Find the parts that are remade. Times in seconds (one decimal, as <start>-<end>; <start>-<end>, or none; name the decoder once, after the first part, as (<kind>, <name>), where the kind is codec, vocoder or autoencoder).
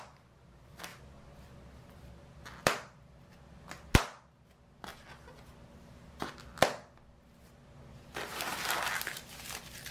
none